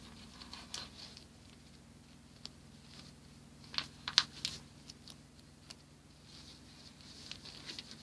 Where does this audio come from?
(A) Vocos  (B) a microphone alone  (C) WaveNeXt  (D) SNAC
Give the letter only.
B